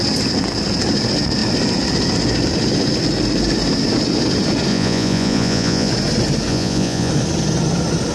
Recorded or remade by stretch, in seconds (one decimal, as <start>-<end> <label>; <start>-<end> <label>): 0.0-4.7 recorded; 4.7-5.9 remade; 5.9-6.5 recorded; 6.5-7.1 remade; 7.1-8.1 recorded

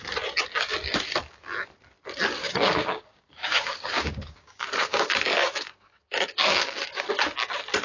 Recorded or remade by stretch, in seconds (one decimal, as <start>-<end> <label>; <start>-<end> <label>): 0.0-2.4 recorded; 2.4-7.1 remade; 7.1-7.8 recorded

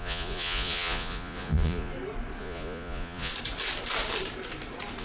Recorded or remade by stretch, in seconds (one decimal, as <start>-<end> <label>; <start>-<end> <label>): 0.0-1.9 remade; 1.9-2.4 recorded; 2.4-3.3 remade; 3.3-5.0 recorded